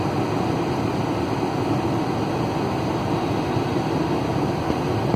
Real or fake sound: real